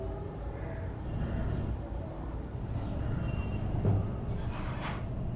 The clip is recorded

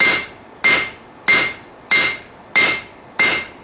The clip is recorded